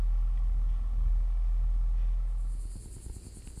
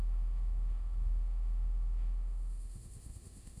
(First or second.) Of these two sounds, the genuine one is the first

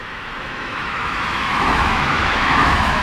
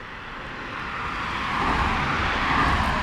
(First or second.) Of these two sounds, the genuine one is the second